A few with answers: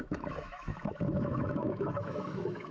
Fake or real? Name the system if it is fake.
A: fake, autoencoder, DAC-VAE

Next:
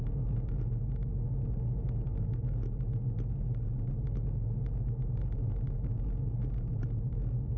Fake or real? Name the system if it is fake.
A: real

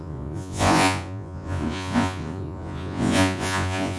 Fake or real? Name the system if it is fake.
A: fake, vocoder, Vocos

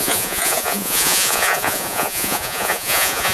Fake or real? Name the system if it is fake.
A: fake, vocoder, Vocos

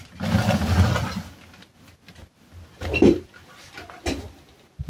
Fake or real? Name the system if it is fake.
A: real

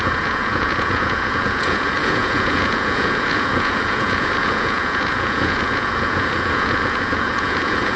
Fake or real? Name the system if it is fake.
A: fake, vocoder, Vocos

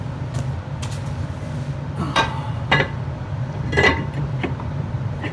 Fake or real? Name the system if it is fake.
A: fake, vocoder, BigVGAN v2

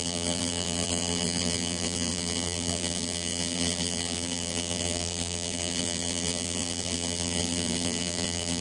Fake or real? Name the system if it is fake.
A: fake, vocoder, BigVGAN v2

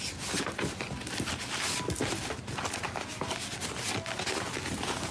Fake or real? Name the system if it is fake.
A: real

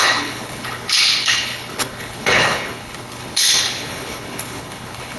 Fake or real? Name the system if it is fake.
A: fake, codec, HILCodec